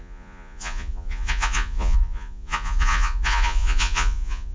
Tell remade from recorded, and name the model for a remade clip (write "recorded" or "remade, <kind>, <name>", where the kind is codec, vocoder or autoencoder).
remade, vocoder, Vocos